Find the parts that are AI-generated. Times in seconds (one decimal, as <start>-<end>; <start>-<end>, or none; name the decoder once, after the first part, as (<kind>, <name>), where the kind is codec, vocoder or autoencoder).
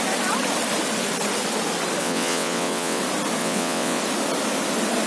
2.0-3.0 (vocoder, WaveNeXt); 3.4-4.0